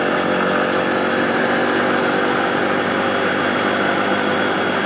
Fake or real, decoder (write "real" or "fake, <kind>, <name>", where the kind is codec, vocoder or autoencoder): real